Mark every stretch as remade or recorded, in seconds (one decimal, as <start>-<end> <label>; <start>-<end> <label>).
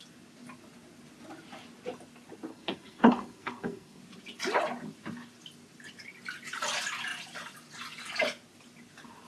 0.0-2.5 recorded; 2.5-4.0 remade; 4.0-9.3 recorded